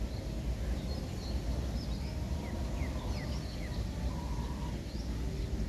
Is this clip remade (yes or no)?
no